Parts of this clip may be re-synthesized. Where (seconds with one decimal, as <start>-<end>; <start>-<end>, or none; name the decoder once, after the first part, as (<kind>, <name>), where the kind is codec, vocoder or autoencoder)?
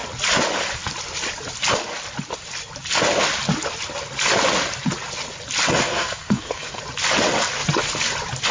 5.8-6.8 (codec, SNAC)